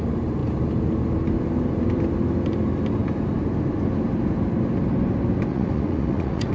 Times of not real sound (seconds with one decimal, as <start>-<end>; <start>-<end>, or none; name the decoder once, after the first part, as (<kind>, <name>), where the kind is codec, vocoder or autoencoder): 5.5-6.5 (vocoder, Vocos)